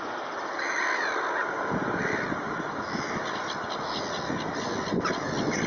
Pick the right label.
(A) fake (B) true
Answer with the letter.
B